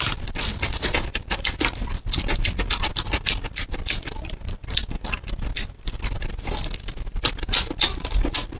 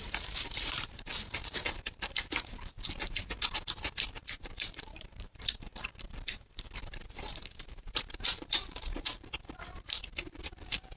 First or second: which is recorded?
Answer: first